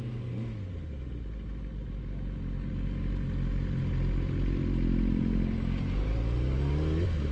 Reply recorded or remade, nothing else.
recorded